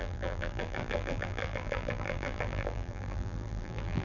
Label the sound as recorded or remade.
remade